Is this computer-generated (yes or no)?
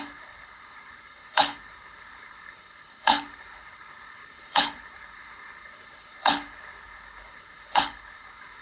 yes